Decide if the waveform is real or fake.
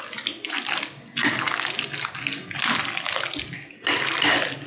real